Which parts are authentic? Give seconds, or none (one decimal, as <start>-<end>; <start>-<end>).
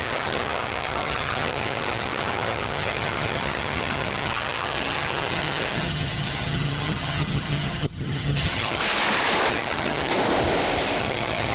8.8-9.5; 10.1-11.0